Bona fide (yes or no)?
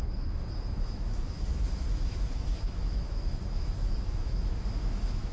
no